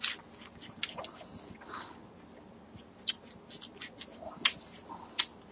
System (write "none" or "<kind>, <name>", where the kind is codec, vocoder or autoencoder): none